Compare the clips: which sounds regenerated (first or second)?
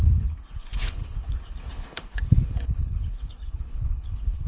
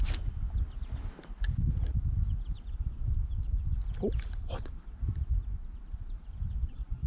first